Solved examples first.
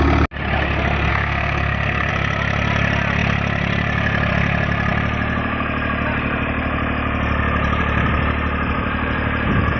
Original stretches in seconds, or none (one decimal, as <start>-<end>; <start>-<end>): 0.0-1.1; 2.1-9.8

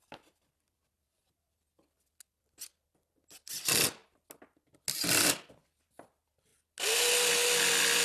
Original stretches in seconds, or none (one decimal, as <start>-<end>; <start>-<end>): 0.0-8.0

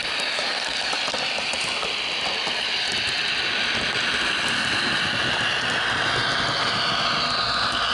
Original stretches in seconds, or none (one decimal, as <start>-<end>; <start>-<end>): 0.0-7.9